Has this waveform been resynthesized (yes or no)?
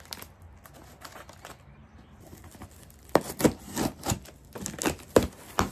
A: no